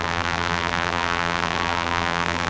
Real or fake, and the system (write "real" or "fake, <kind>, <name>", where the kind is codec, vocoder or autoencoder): fake, vocoder, BigVGAN v2